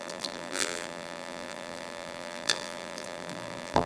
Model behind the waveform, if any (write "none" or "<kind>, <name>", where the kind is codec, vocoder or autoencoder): vocoder, BigVGAN v2